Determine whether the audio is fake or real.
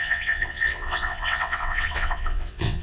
fake